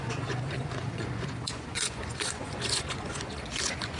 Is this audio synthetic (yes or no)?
yes